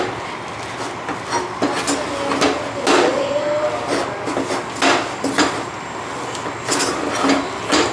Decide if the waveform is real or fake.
real